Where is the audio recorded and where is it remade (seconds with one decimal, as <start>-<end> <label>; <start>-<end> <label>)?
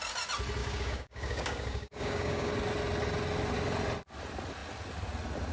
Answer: 0.0-0.6 recorded; 0.6-2.5 remade; 2.5-5.5 recorded